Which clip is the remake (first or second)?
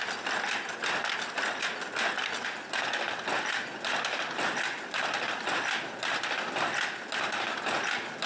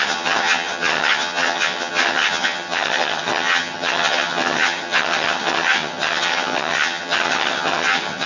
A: second